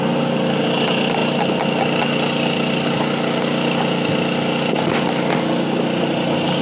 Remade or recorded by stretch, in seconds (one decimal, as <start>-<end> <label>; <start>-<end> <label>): 0.0-6.6 recorded